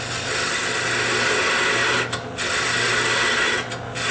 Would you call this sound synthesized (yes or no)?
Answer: no